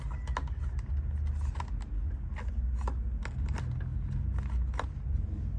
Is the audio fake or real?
real